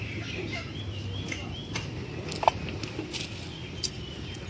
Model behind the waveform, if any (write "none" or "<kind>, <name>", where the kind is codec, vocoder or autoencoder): none